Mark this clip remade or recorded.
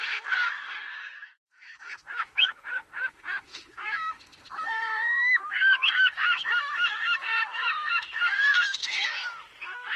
remade